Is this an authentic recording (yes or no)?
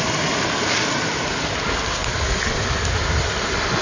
yes